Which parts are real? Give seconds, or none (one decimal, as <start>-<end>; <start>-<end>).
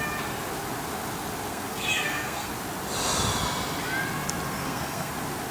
0.0-1.5; 2.5-4.6; 5.1-5.5